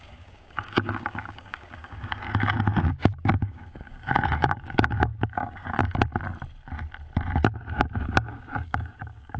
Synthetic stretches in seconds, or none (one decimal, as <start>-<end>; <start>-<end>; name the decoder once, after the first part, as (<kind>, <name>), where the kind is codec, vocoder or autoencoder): 0.0-5.8 (codec, DAC); 7.7-9.4

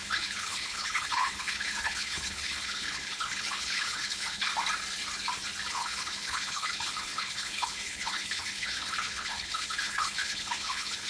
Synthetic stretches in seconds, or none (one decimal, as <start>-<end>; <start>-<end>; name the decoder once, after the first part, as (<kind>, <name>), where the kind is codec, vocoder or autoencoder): 0.0-4.5 (codec, HILCodec); 5.7-11.1